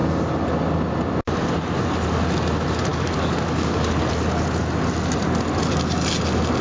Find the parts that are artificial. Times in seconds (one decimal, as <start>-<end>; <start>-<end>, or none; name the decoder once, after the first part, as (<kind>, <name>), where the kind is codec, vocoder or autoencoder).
2.9-4.1 (codec, DAC)